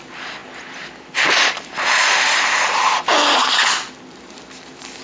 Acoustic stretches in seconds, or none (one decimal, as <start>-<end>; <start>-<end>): 0.0-5.0